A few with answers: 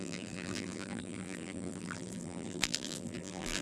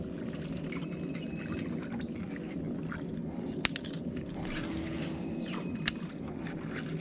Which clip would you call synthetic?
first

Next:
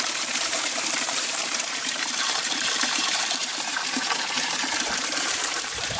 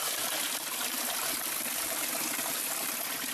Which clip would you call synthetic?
first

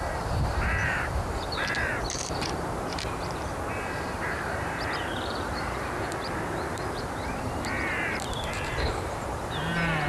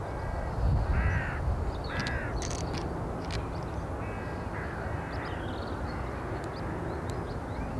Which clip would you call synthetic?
first